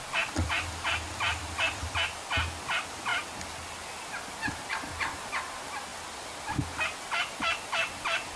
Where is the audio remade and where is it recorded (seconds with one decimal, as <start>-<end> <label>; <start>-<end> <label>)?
0.0-8.4 recorded